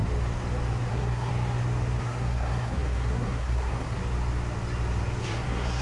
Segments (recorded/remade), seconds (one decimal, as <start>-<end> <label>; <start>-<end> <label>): 0.0-0.9 recorded; 0.9-1.3 remade; 1.3-2.0 recorded; 2.0-4.0 remade; 4.0-5.2 recorded; 5.2-5.8 remade